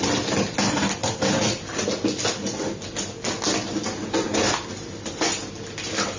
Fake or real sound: real